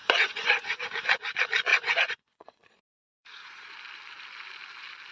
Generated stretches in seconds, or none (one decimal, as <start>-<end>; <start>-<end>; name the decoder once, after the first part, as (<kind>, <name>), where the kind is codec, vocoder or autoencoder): 0.0-0.9 (vocoder, Vocos); 1.7-3.7